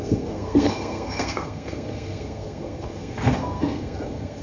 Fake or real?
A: fake